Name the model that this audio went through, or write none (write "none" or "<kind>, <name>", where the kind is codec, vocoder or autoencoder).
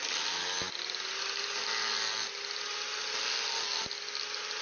none